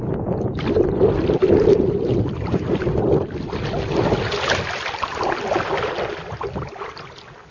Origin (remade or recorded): recorded